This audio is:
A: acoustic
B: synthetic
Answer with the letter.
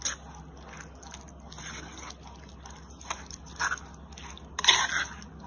A